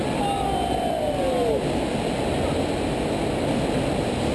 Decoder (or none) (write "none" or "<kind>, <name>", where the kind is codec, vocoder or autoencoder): none